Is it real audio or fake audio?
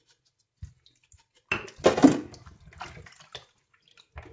real